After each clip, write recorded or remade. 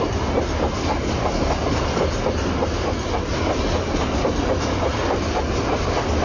recorded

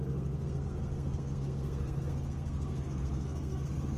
remade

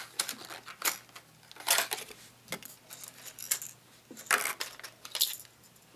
recorded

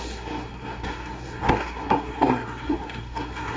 remade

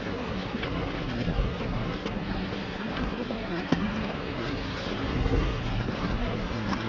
remade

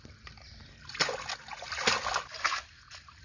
recorded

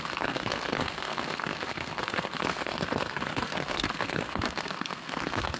remade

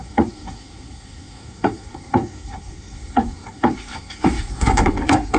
remade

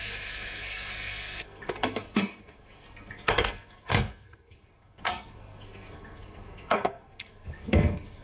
remade